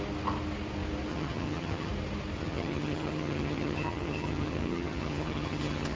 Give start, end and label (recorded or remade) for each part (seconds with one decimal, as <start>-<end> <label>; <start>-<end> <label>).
0.0-1.1 recorded; 1.1-1.9 remade; 1.9-2.4 recorded; 2.4-6.0 remade